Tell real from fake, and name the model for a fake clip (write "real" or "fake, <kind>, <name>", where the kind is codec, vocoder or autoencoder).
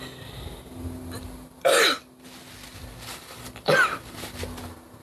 fake, vocoder, BigVGAN v2